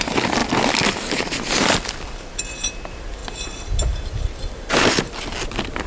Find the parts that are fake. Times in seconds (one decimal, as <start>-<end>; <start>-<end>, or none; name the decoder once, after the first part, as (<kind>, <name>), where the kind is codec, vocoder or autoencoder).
none